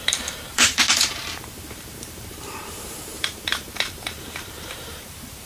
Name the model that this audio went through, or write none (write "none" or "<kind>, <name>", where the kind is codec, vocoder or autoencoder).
vocoder, BigVGAN v2